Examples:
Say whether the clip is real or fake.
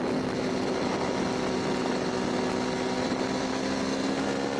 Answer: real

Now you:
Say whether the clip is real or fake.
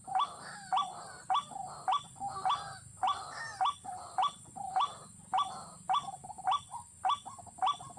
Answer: real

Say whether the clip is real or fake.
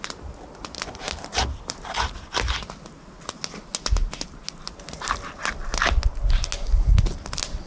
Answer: real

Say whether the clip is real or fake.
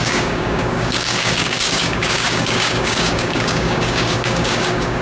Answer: fake